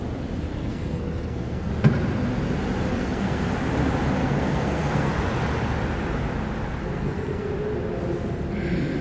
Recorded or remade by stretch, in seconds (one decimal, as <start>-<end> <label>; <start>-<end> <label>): 0.0-0.5 recorded; 0.5-1.7 remade; 1.7-2.9 recorded; 2.9-3.5 remade; 3.5-4.2 recorded; 4.2-5.1 remade; 5.1-6.8 recorded; 6.8-7.5 remade; 7.5-9.0 recorded

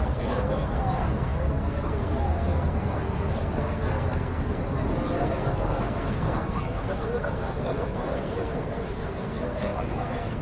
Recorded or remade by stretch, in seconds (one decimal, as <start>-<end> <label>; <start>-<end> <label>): 0.0-4.6 remade; 4.6-5.2 recorded; 5.2-10.4 remade

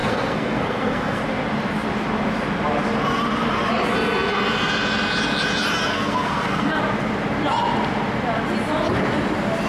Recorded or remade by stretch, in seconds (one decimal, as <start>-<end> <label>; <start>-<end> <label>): 0.0-1.2 remade; 1.2-5.9 recorded; 5.9-6.8 remade; 6.8-9.7 recorded

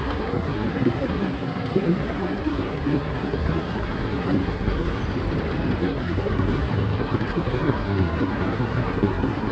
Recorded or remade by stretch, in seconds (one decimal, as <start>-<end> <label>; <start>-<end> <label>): 0.0-5.0 remade; 5.0-5.8 recorded; 5.8-9.5 remade

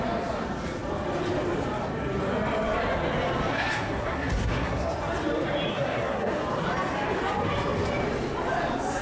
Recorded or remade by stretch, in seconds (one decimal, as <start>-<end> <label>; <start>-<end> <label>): 0.0-3.5 recorded; 3.5-4.9 remade; 4.9-5.7 recorded; 5.7-6.3 remade; 6.3-9.0 recorded

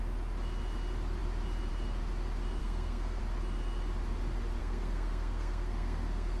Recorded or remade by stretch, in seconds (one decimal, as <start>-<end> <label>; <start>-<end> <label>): 0.0-2.6 recorded; 2.6-3.2 remade; 3.2-4.6 recorded; 4.6-6.4 remade

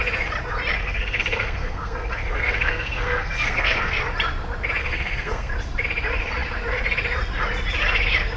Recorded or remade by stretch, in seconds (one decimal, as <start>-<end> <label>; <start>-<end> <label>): 0.0-0.8 recorded; 0.8-3.9 remade; 3.9-4.8 recorded; 4.8-5.5 remade; 5.5-8.4 recorded

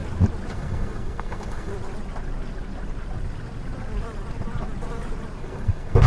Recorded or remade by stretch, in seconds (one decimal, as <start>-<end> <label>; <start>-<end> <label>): 0.0-0.5 recorded; 0.5-1.7 remade; 1.7-5.4 recorded; 5.4-6.1 remade